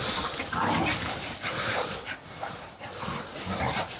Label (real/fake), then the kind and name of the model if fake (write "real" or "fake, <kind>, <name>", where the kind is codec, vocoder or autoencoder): fake, vocoder, BigVGAN v2